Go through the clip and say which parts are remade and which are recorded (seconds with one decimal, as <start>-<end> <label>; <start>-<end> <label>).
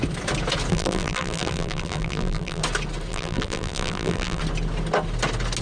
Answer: 0.0-0.7 recorded; 0.7-2.6 remade; 2.6-3.1 recorded; 3.1-4.4 remade; 4.4-5.6 recorded